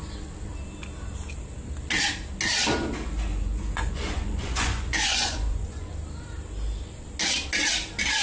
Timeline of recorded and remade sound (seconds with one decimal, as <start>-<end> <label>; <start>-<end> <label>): 0.0-3.3 recorded; 3.3-5.9 remade; 5.9-8.2 recorded